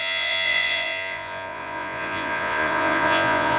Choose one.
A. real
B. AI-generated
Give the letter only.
B